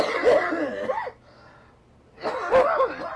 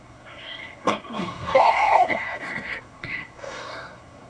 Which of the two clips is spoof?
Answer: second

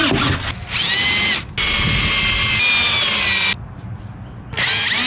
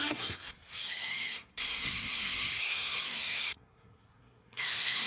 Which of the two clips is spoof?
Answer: second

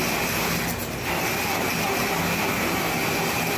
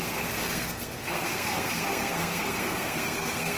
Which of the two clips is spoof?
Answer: second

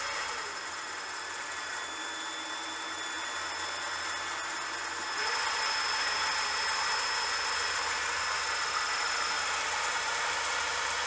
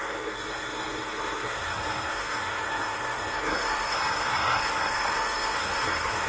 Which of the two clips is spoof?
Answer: second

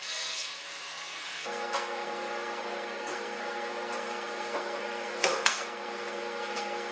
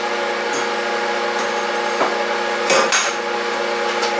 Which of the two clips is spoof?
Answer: first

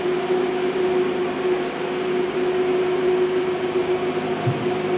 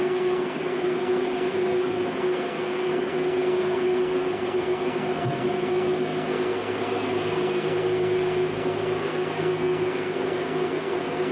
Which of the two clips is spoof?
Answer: second